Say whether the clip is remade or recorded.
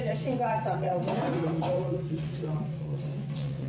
remade